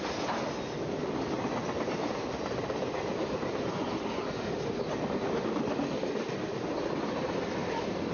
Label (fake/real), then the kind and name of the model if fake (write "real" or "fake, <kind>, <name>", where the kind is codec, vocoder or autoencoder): real